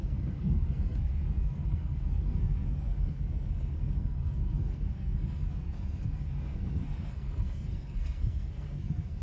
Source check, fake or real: fake